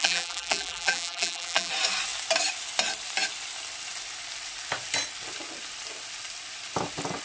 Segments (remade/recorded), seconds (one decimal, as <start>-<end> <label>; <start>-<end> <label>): 0.0-1.7 remade; 1.7-7.2 recorded